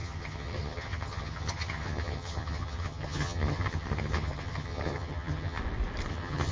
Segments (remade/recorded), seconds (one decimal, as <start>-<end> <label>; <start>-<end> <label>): 0.0-5.6 remade; 5.6-6.1 recorded; 6.1-6.5 remade